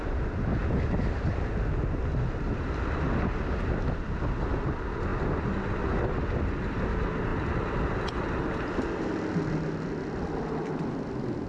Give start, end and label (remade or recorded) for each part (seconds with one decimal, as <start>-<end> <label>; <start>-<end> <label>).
0.0-0.6 recorded; 0.6-1.3 remade; 1.3-11.5 recorded